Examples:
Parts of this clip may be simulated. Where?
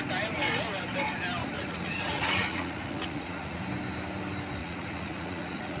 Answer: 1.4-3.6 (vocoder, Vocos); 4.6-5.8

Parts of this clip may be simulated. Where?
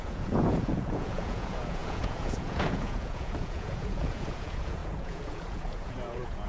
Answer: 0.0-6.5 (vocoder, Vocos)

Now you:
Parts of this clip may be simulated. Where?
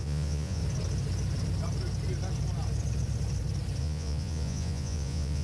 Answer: 0.0-0.6 (vocoder, Vocos); 3.8-5.4